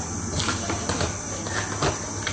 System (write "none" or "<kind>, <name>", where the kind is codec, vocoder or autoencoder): none